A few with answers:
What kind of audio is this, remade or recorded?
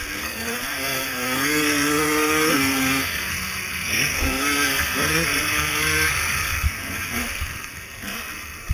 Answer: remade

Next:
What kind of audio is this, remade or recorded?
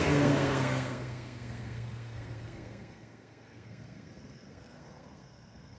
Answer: remade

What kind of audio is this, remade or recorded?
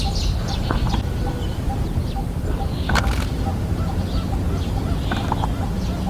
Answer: recorded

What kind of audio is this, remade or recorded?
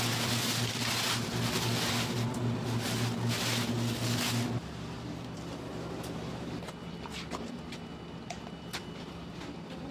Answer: recorded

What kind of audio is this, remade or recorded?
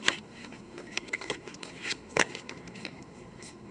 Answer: remade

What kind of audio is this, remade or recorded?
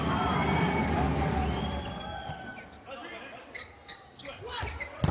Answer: recorded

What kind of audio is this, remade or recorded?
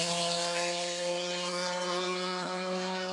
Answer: remade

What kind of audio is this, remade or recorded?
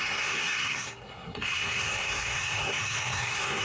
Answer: remade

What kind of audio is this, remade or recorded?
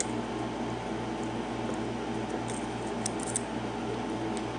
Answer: recorded